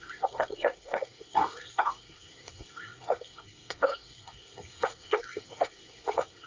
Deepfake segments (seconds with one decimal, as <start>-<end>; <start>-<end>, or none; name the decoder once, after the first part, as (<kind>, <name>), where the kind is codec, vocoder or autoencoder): 0.0-6.5 (codec, SNAC)